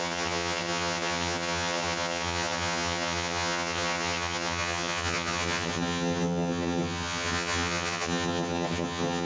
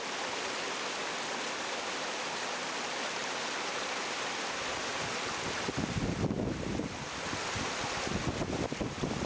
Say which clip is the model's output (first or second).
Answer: first